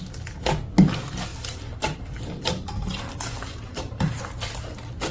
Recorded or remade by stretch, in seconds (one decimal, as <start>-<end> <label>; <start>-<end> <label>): 0.0-1.3 recorded; 1.3-4.2 remade; 4.2-5.1 recorded